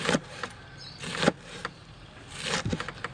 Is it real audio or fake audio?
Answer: real